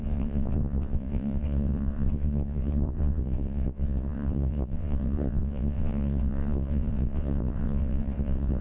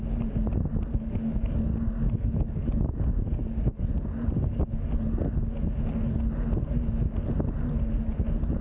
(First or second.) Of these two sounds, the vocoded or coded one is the first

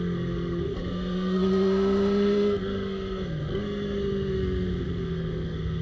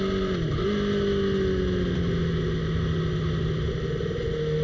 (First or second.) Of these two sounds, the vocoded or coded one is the first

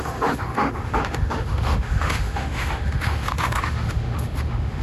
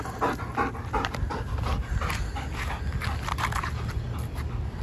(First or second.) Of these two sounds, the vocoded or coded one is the first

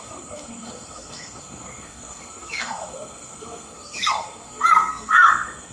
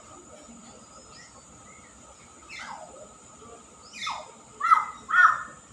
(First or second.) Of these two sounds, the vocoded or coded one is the first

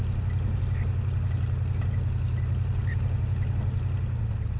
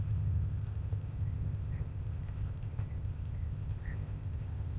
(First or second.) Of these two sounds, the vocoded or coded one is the second